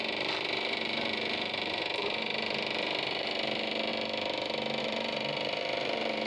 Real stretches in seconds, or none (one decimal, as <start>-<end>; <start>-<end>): 2.3-3.1; 3.9-4.8